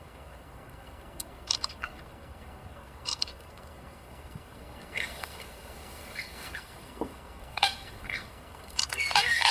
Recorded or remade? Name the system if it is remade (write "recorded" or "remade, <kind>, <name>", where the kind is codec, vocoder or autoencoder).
remade, codec, SNAC